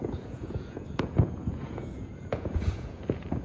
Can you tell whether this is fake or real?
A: fake